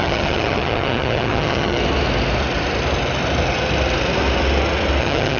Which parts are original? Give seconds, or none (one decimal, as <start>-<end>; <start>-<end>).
1.8-5.0